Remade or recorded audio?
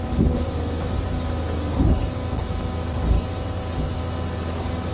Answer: recorded